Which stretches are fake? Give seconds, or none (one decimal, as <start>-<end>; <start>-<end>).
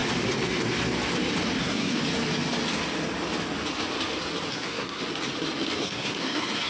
1.6-2.0; 4.5-5.0; 5.8-6.7